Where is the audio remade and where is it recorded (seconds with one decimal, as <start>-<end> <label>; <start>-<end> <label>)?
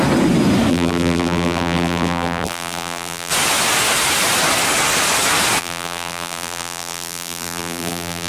0.0-0.7 recorded; 0.7-3.3 remade; 3.3-5.6 recorded; 5.6-8.3 remade